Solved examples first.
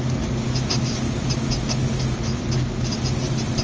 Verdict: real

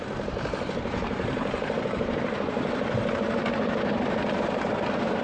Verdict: fake